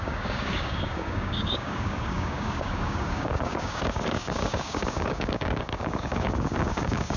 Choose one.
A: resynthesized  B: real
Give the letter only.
A